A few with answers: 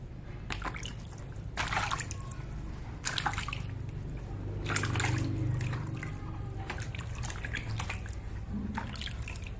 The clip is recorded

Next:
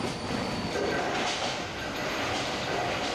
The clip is recorded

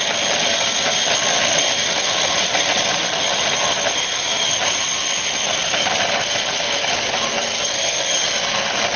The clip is recorded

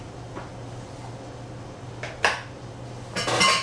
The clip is recorded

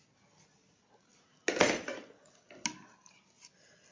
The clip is recorded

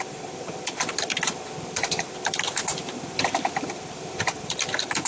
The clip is remade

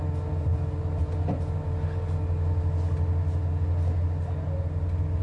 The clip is recorded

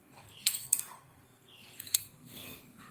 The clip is remade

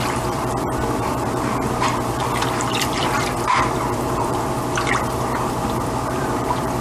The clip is remade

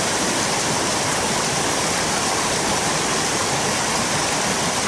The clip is remade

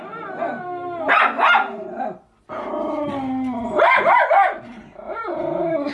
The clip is recorded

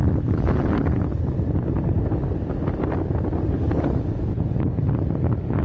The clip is recorded